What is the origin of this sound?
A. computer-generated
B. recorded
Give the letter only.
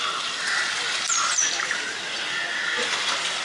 B